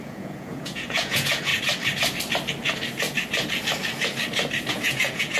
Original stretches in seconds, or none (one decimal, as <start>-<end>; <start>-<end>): 1.5-4.7